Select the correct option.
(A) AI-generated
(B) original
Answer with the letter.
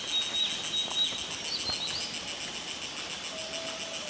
B